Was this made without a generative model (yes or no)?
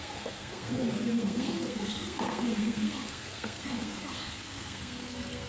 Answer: no